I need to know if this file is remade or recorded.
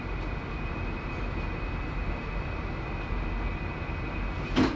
recorded